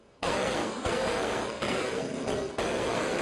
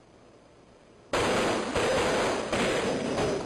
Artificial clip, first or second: first